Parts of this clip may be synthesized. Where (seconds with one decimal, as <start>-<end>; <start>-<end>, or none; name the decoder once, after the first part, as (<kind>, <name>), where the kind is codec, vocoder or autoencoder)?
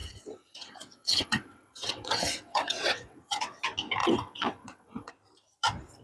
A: 0.0-3.6 (vocoder, WaveNeXt); 4.0-5.1